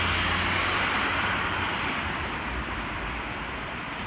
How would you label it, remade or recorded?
recorded